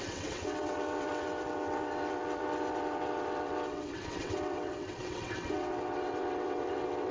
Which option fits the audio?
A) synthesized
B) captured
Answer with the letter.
A